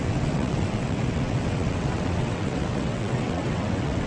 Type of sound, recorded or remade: remade